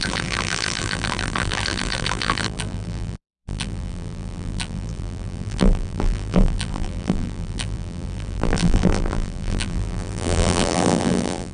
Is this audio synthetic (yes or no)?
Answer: yes